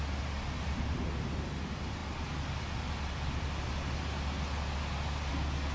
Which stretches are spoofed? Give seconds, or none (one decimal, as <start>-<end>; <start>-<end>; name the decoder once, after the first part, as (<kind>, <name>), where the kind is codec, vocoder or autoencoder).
none

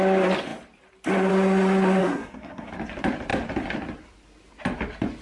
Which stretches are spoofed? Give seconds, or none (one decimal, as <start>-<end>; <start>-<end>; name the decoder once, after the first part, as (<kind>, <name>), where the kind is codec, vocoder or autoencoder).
2.0-2.7 (codec, SNAC)

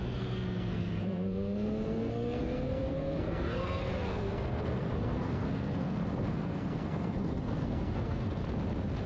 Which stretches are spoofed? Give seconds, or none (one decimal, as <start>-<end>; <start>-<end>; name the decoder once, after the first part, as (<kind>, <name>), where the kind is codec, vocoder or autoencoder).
0.0-8.4 (codec, SNAC)

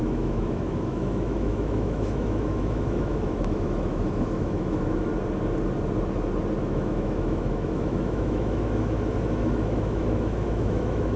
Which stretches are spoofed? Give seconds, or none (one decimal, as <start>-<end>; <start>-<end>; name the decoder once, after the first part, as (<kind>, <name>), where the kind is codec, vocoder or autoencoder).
0.0-5.1 (autoencoder, DAC-VAE); 6.6-11.2

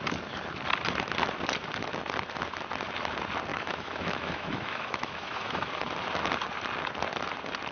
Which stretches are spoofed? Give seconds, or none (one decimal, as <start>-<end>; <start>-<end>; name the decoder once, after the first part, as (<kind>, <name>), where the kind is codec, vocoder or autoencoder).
3.5-5.7 (autoencoder, DAC-VAE)

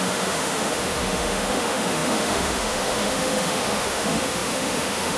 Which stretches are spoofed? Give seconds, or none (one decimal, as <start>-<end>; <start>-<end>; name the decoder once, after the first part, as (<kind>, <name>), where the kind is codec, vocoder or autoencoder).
0.0-5.2 (autoencoder, DAC-VAE)

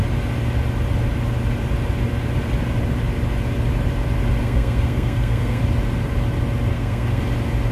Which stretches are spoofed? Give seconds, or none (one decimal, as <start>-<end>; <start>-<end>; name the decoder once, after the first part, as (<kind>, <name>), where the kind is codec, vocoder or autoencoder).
4.4-5.6 (codec, SNAC); 6.7-7.2